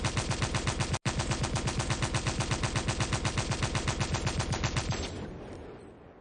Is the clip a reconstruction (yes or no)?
no